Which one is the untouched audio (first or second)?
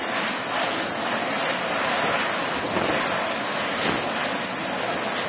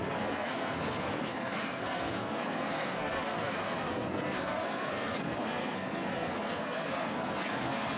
first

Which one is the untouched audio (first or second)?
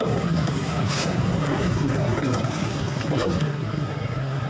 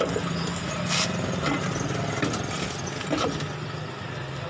second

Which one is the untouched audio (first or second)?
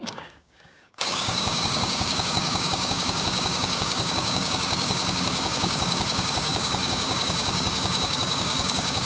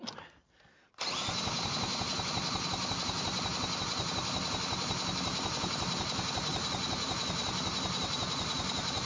second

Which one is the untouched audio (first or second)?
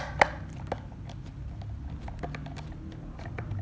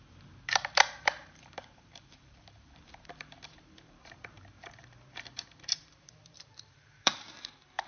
first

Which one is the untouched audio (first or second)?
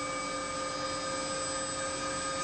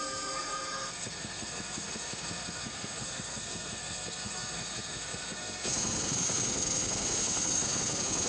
first